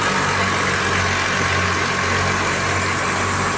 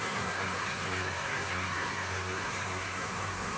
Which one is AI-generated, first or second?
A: second